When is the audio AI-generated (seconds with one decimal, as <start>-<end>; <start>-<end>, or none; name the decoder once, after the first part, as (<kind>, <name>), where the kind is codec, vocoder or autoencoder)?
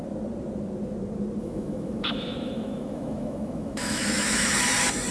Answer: 1.4-4.5 (autoencoder, DAC-VAE)